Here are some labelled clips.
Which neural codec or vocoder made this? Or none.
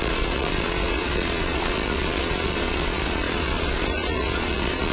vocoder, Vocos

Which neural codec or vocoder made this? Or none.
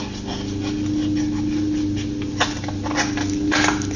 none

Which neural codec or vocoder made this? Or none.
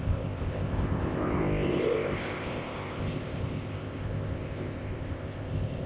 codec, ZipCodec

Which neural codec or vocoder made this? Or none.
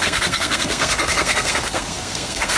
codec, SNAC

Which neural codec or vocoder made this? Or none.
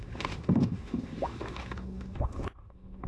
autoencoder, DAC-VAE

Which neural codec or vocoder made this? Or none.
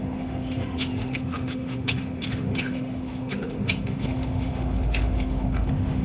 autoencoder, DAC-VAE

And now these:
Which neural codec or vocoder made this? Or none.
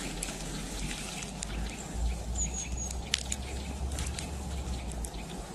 none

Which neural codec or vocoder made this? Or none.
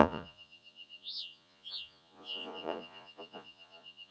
vocoder, Vocos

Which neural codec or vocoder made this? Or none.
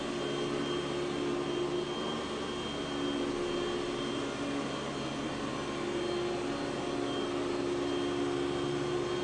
none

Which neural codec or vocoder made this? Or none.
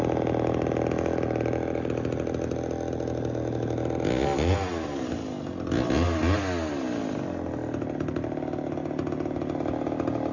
none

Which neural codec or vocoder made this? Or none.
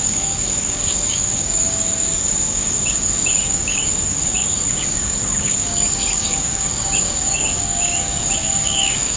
codec, DAC